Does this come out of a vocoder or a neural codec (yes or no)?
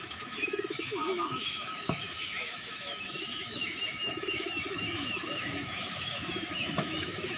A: yes